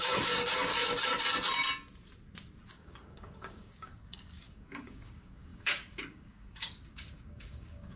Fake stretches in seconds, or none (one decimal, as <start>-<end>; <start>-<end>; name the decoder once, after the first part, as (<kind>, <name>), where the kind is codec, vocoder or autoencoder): 0.0-0.7 (codec, DAC); 2.7-8.0

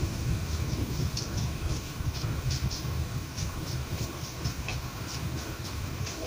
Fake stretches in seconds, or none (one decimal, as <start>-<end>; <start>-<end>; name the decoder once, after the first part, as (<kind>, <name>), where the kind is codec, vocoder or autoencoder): 0.0-6.3 (codec, DAC)

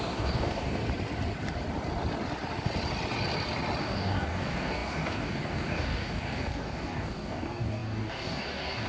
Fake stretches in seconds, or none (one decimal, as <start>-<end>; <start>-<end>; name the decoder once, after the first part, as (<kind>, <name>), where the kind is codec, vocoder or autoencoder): 0.0-0.8 (codec, DAC); 3.8-8.9

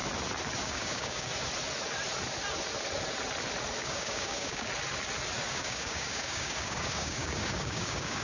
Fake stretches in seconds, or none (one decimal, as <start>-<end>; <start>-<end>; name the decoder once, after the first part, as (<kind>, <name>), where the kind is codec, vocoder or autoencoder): 0.6-1.3 (codec, DAC); 3.8-4.7; 5.5-8.2

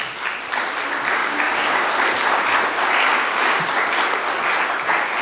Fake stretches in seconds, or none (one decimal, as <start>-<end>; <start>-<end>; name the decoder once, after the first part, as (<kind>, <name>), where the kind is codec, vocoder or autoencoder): 1.2-1.9 (codec, DAC); 3.1-3.9

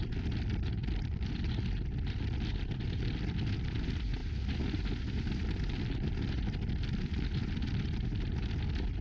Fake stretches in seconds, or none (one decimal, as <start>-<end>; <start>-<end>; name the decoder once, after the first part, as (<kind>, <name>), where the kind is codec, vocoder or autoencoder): none

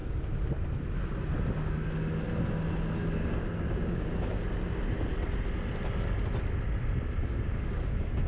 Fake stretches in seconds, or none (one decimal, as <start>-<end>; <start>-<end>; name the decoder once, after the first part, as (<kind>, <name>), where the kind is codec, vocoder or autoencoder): 3.2-4.4 (codec, DAC); 7.2-8.3